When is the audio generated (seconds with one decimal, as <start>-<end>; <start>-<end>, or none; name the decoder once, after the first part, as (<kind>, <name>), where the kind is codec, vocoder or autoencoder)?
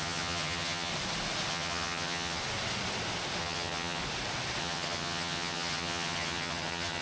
0.0-0.9 (vocoder, HiFi-GAN); 1.5-2.4; 3.4-4.0; 4.6-7.0